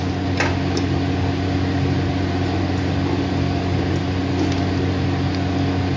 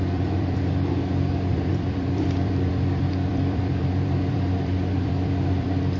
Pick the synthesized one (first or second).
second